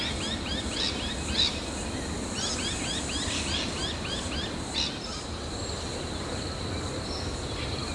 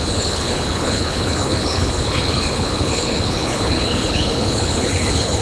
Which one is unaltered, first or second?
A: first